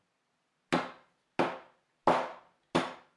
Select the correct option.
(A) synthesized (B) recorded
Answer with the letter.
B